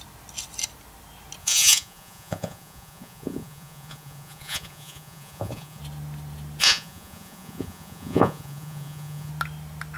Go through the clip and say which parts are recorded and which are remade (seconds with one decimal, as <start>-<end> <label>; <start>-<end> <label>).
0.0-1.4 recorded; 1.4-5.8 remade; 5.8-6.6 recorded; 6.6-9.3 remade; 9.3-10.0 recorded